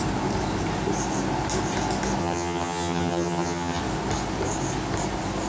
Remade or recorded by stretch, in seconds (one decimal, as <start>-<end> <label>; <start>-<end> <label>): 0.0-2.2 recorded; 2.2-3.8 remade; 3.8-5.5 recorded